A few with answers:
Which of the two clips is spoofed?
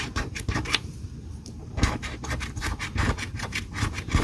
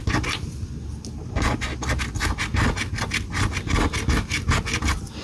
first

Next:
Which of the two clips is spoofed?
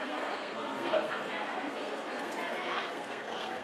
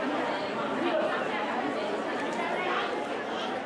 first